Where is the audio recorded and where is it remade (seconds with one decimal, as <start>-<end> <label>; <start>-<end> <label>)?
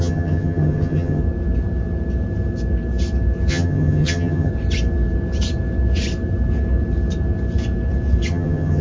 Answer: 0.0-1.2 remade; 1.2-3.5 recorded; 3.5-4.5 remade; 4.5-8.3 recorded; 8.3-8.8 remade